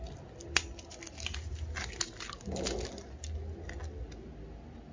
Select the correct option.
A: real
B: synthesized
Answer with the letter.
A